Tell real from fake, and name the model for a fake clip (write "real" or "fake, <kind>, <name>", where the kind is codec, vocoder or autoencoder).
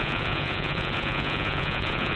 fake, vocoder, Vocos